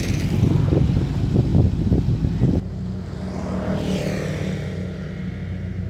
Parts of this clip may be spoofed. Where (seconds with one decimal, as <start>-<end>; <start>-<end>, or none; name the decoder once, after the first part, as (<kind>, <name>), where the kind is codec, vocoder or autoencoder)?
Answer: none